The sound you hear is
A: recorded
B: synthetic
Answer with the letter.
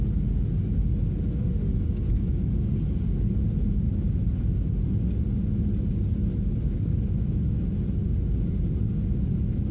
A